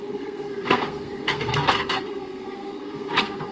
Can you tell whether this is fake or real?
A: fake